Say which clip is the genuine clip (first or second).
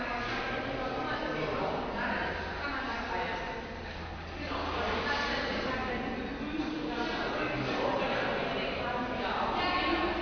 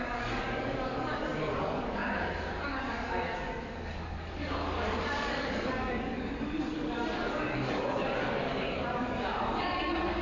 first